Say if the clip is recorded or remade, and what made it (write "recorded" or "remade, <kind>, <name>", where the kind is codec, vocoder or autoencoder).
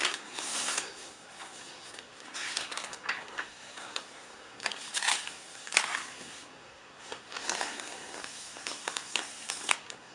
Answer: remade, codec, SNAC